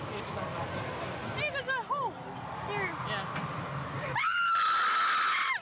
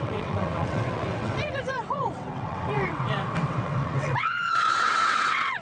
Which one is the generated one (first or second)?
second